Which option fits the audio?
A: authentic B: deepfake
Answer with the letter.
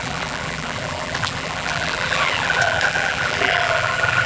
B